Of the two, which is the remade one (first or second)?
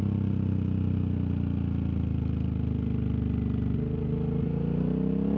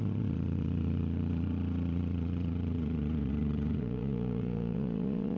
second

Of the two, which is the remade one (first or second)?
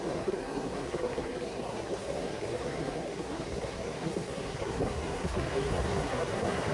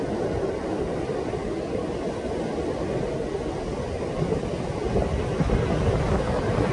first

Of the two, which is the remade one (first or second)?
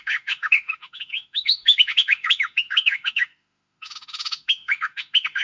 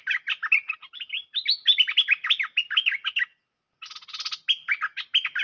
first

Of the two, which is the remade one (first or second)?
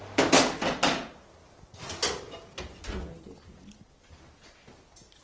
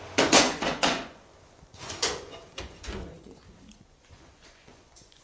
second